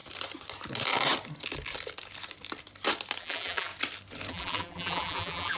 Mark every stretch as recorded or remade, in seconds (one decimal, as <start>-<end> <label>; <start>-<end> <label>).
0.0-3.2 recorded; 3.2-3.7 remade; 3.7-4.3 recorded; 4.3-5.6 remade